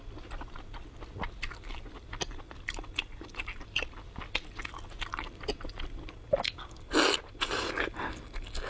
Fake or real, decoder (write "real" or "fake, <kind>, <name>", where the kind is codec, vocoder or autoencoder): real